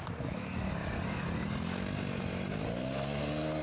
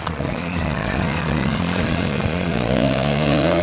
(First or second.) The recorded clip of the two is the first